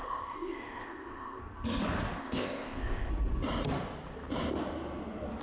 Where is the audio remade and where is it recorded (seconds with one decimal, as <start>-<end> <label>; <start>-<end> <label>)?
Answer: 0.0-1.4 remade; 1.4-2.2 recorded; 2.2-3.1 remade; 3.1-5.4 recorded